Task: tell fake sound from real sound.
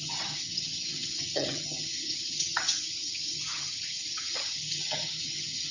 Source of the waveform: fake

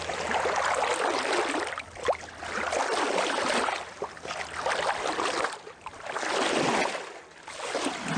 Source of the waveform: real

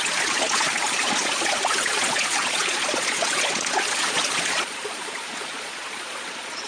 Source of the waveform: fake